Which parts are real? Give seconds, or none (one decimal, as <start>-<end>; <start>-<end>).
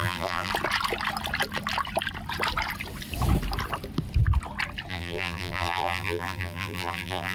0.5-4.9